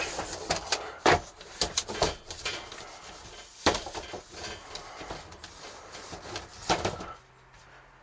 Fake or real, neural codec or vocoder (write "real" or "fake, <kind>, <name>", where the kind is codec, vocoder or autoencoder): real